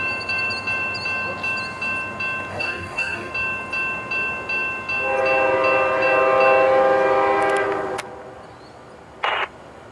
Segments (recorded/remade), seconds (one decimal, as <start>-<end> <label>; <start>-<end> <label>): 0.0-2.5 recorded; 2.5-3.3 remade; 3.3-9.9 recorded